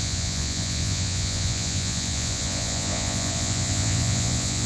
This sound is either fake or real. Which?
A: fake